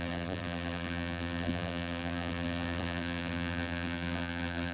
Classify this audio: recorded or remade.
remade